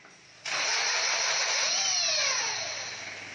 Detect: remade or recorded recorded